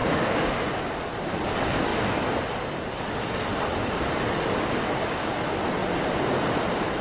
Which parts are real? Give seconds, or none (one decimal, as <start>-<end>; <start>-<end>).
0.6-7.0

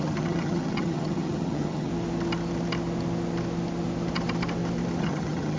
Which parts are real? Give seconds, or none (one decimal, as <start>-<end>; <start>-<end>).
1.9-5.0

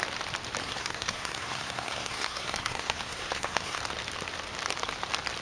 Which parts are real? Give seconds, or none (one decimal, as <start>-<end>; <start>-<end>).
0.0-0.6; 3.8-5.4

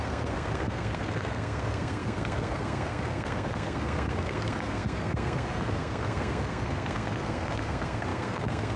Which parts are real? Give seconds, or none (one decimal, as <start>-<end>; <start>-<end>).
none

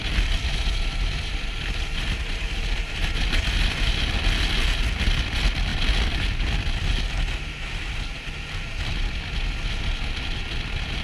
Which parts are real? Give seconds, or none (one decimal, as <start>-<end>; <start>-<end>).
0.0-11.0

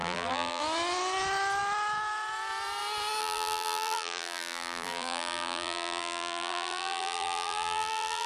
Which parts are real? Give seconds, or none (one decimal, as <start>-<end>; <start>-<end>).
0.6-3.2

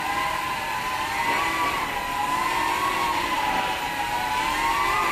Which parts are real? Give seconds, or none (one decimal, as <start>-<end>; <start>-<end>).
0.0-0.5; 1.8-2.2; 2.9-5.1